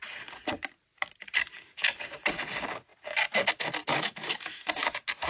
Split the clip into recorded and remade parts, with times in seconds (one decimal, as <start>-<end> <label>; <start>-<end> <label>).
0.0-3.9 recorded; 3.9-4.6 remade; 4.6-5.3 recorded